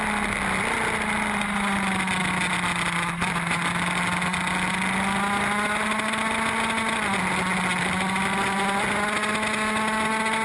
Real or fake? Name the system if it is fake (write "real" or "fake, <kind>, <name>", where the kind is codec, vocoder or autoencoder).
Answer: real